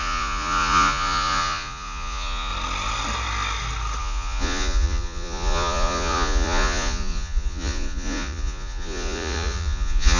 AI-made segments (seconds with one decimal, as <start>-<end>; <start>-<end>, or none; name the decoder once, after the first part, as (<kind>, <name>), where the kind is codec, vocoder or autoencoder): 0.0-2.5 (vocoder, Vocos); 4.0-10.2